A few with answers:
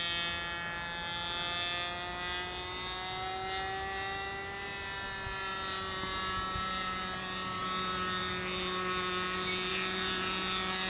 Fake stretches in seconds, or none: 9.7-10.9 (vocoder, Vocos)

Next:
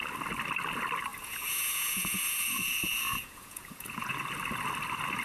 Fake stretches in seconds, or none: 1.1-4.2 (vocoder, Vocos)